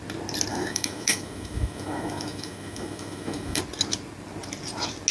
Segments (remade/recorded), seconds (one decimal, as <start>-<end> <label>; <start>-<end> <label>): 0.0-0.5 recorded; 0.5-3.6 remade; 3.6-5.1 recorded